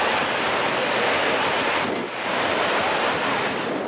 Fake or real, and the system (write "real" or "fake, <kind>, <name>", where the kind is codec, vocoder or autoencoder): real